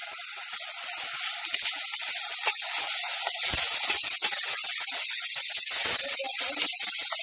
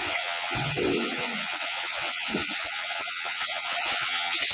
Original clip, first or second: first